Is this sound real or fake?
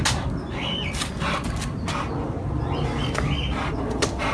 real